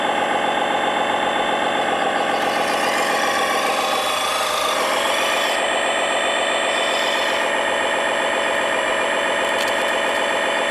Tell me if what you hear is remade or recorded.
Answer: recorded